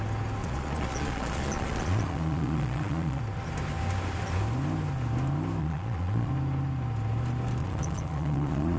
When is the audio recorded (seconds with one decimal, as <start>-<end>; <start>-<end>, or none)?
0.0-0.4; 3.2-5.6; 6.3-7.6